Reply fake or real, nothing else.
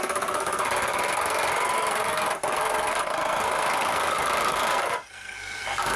fake